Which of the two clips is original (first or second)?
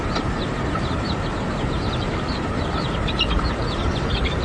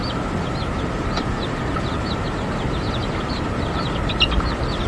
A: second